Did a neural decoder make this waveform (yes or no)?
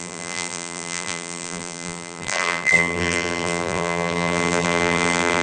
yes